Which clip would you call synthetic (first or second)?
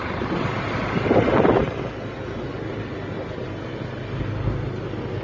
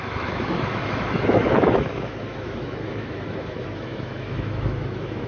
second